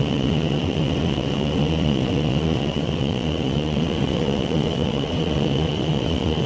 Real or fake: fake